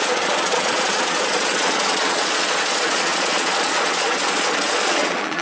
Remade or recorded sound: remade